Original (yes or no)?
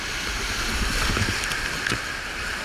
yes